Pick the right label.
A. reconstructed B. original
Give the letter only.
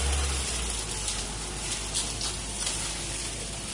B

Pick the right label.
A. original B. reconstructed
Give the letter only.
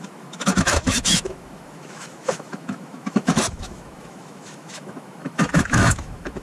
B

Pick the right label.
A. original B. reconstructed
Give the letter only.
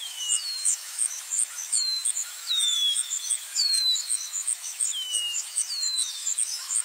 B